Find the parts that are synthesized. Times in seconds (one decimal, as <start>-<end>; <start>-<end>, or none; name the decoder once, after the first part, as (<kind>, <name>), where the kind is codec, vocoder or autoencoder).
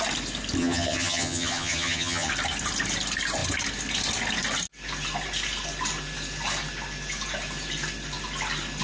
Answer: 0.6-2.3 (vocoder, HiFi-GAN)